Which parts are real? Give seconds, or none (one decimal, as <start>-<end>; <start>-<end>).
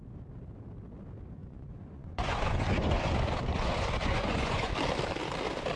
0.0-1.4; 4.7-5.8